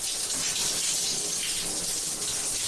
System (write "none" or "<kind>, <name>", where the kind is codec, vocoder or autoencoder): none